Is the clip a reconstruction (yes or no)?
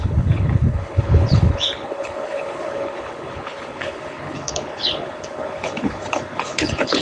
yes